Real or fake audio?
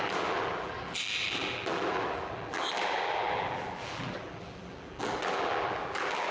fake